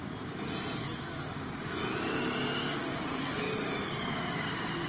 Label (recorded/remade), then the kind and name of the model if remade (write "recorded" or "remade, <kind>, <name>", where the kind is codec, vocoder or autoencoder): recorded